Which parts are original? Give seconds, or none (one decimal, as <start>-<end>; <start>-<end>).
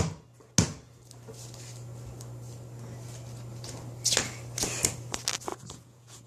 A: 0.0-5.5